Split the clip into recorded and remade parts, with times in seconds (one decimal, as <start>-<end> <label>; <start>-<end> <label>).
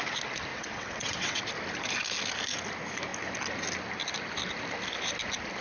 0.0-0.5 recorded; 0.5-1.4 remade; 1.4-5.6 recorded